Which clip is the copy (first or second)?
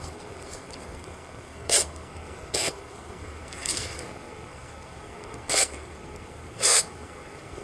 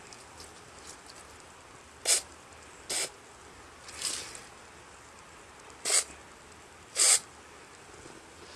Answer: first